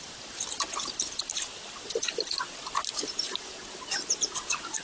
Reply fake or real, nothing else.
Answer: real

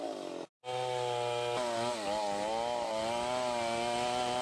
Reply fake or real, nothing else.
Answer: real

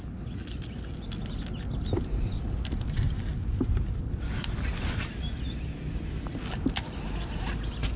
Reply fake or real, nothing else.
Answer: real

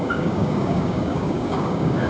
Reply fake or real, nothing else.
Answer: fake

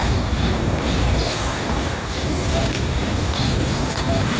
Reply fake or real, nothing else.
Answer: fake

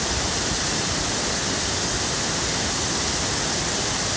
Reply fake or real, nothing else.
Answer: real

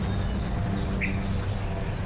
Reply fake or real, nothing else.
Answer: real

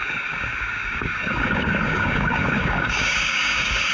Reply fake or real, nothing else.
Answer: fake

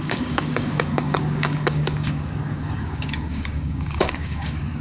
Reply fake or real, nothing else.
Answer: fake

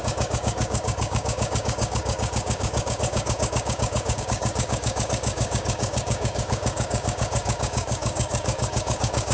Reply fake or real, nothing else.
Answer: fake